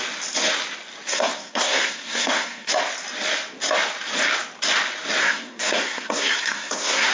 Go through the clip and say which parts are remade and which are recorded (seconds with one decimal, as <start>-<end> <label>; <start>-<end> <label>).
0.0-1.1 recorded; 1.1-2.7 remade; 2.7-5.2 recorded; 5.2-7.1 remade